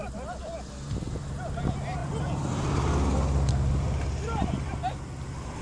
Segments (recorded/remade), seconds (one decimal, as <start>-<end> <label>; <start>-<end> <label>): 0.0-5.6 recorded